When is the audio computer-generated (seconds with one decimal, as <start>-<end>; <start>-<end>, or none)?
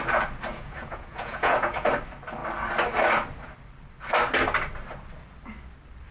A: 0.5-1.9